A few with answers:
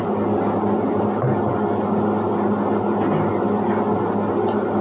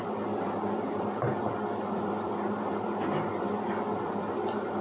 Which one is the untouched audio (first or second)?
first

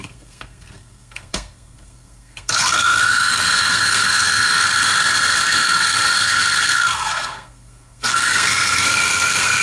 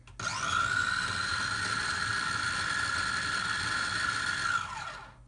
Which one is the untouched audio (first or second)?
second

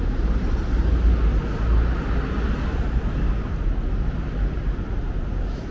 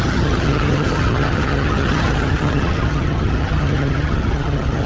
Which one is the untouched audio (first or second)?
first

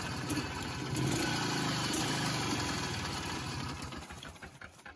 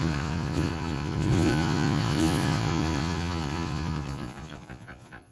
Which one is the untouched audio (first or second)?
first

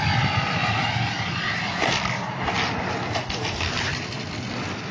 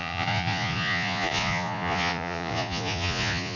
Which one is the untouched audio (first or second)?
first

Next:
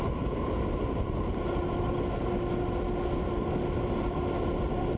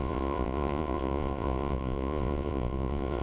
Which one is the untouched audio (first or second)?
first